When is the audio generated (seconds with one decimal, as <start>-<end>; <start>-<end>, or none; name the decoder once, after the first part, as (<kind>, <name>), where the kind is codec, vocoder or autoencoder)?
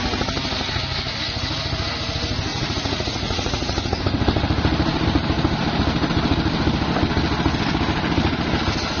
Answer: 2.5-4.0 (vocoder, Vocos)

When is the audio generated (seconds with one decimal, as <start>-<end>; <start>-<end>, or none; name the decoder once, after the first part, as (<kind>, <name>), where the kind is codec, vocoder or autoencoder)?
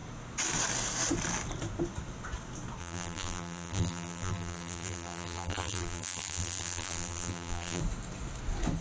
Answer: 2.8-7.8 (vocoder, BigVGAN v2)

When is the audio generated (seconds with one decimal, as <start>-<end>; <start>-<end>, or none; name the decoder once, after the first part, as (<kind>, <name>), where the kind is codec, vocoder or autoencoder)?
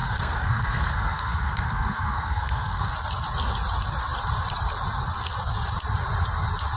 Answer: 0.0-2.9 (codec, SNAC)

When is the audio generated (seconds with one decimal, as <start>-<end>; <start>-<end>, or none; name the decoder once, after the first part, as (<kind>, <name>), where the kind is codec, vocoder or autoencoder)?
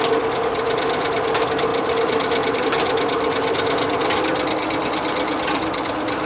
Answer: none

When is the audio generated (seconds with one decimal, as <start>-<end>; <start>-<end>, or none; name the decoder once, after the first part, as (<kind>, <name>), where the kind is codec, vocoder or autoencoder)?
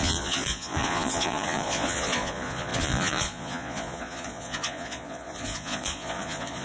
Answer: 0.0-6.6 (vocoder, Vocos)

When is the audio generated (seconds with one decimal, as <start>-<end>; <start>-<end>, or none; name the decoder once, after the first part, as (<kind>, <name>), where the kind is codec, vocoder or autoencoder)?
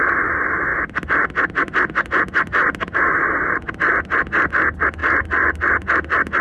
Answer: none